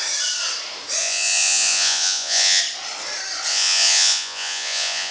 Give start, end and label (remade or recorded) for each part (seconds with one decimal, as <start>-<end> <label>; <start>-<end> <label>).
0.0-1.0 recorded; 1.0-2.6 remade; 2.6-3.5 recorded; 3.5-5.1 remade